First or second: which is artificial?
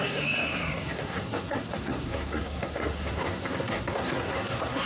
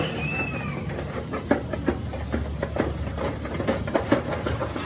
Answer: first